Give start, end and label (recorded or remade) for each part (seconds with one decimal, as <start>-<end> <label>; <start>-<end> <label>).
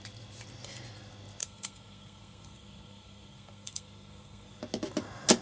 0.0-1.4 recorded; 1.4-4.6 remade; 4.6-5.4 recorded